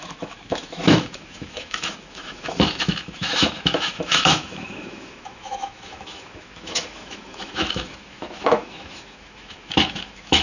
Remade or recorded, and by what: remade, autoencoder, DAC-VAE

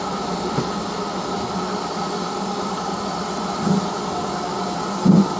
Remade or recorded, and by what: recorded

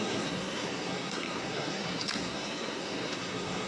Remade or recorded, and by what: remade, codec, SNAC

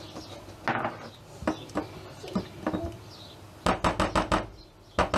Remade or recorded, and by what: recorded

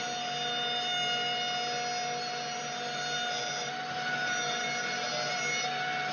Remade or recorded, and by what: recorded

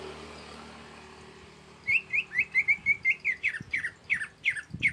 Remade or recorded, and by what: recorded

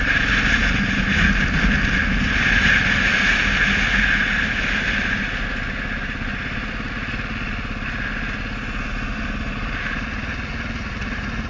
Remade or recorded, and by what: recorded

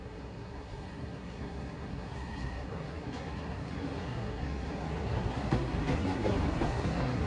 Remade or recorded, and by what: remade, codec, SNAC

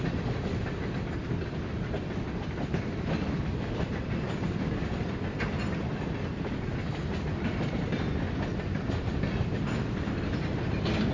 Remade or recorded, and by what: recorded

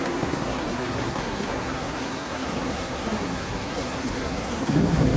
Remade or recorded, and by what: remade, codec, SNAC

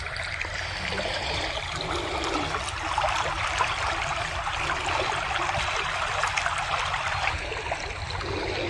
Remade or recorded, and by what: recorded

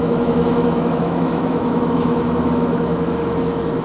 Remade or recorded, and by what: remade, autoencoder, DAC-VAE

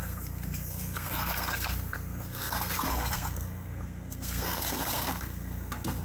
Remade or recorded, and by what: remade, codec, SNAC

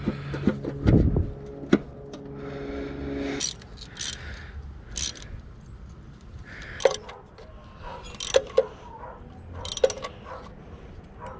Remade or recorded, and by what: recorded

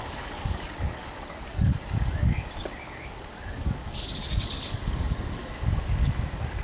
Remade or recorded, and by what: remade, codec, DAC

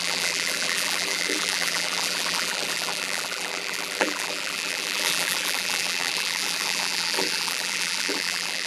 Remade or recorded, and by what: remade, vocoder, BigVGAN v2